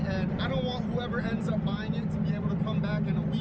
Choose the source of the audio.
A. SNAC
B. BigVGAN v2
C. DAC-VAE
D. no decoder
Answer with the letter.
D